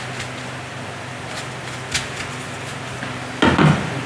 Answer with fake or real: real